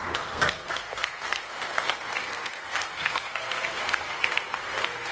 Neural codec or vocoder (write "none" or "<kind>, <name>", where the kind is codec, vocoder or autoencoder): codec, SNAC